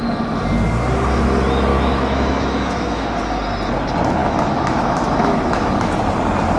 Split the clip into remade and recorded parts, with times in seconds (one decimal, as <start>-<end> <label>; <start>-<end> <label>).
0.0-1.7 recorded; 1.7-3.2 remade; 3.2-4.2 recorded; 4.2-5.7 remade; 5.7-6.6 recorded